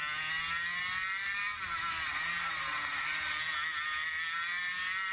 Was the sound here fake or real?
real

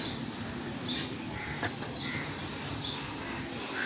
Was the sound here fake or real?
real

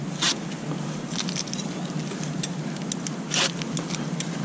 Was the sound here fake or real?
real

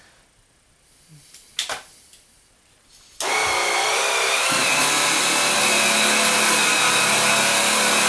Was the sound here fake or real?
real